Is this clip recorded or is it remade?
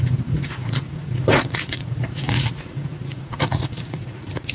remade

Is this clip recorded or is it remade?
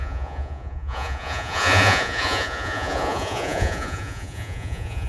remade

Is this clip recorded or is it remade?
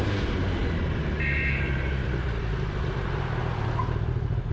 recorded